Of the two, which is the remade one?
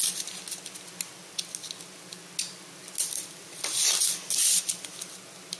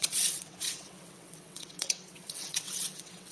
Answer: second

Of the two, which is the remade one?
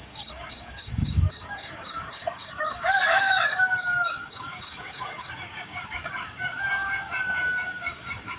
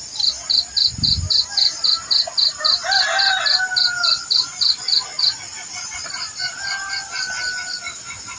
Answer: first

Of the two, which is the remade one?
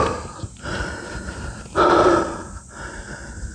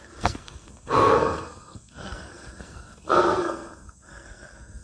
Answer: second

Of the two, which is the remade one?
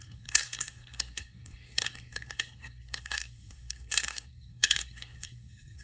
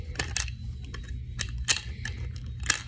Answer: first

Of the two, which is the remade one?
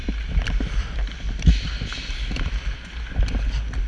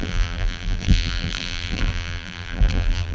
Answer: second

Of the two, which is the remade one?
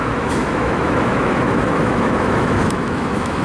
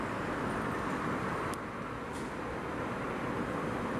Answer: first